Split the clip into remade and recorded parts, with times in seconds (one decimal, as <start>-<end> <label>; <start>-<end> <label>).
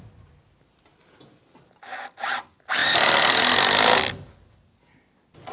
0.0-5.5 recorded